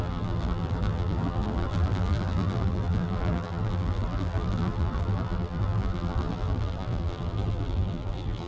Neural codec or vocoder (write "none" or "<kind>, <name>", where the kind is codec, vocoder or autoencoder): vocoder, BigVGAN v2